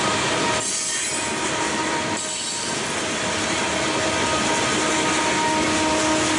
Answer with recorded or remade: recorded